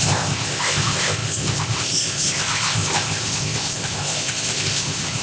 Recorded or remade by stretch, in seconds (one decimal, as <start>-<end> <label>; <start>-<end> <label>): 0.0-5.2 remade

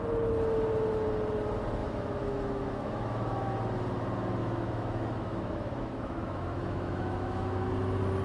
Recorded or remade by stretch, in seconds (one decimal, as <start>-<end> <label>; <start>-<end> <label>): 0.0-1.8 recorded; 1.8-3.5 remade; 3.5-4.4 recorded; 4.4-7.7 remade; 7.7-8.2 recorded